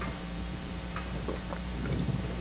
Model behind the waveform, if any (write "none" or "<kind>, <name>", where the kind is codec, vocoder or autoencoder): vocoder, BigVGAN v2